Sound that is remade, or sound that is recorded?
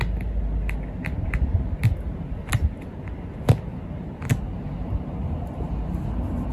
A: recorded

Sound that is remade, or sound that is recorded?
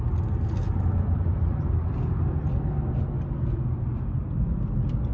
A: recorded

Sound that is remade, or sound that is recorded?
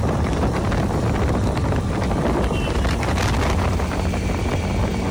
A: remade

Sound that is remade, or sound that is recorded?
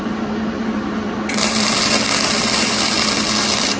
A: recorded